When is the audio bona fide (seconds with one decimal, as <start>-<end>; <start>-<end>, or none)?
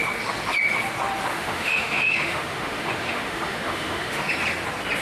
0.0-1.3; 4.3-5.0